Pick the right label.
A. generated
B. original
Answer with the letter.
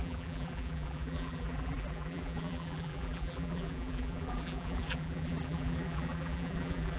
A